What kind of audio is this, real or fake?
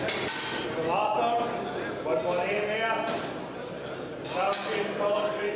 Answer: real